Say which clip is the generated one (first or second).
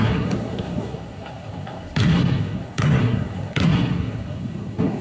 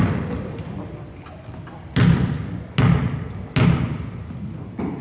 first